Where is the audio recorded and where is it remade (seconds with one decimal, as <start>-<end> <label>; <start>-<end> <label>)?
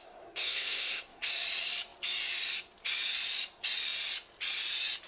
0.0-1.3 remade; 1.3-5.1 recorded